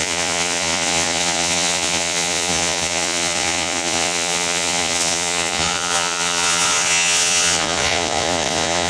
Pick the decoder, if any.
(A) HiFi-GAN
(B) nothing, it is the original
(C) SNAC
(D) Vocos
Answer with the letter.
D